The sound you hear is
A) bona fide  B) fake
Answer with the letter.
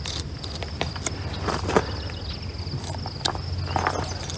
A